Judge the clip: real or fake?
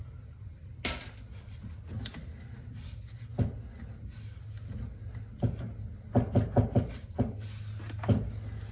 real